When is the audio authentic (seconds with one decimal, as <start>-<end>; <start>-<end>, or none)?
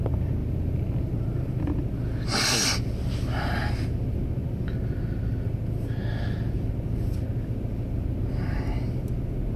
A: 0.0-0.4; 1.1-9.6